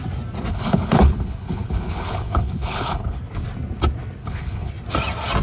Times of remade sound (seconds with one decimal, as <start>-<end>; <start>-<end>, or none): 0.5-3.2; 4.2-4.7